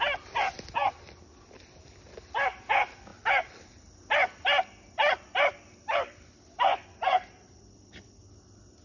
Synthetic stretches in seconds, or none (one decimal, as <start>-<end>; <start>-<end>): none